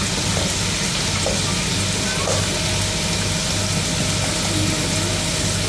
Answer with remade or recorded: recorded